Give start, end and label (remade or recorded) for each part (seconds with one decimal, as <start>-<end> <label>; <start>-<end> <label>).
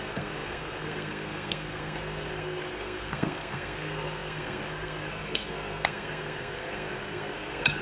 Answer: 0.0-7.8 remade